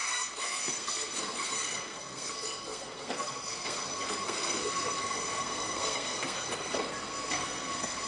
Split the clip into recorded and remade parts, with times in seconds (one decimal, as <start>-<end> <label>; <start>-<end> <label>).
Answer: 0.0-8.1 remade